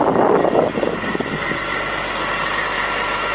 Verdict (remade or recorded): recorded